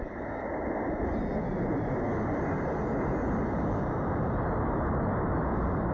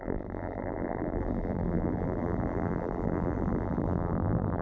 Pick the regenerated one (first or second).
second